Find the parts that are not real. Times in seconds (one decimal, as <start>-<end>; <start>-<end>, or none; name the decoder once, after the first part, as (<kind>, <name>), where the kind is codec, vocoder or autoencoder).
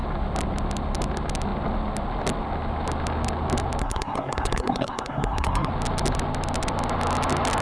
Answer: 3.8-5.7 (codec, SNAC)